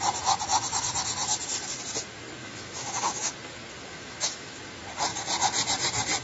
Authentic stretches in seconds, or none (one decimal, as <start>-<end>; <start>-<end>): 0.0-2.4; 3.3-3.9; 4.6-6.2